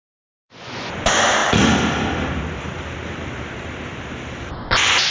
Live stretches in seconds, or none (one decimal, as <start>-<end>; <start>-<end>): 1.4-4.5